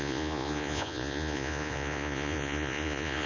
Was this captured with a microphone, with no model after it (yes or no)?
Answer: no